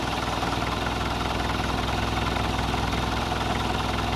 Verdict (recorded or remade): remade